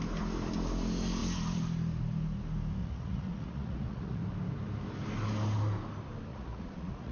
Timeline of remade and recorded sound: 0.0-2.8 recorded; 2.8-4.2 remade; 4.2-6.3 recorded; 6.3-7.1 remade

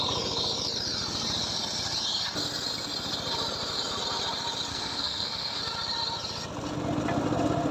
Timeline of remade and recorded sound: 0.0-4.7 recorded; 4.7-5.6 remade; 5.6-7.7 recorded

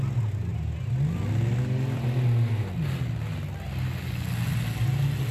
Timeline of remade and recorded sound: 0.0-5.3 recorded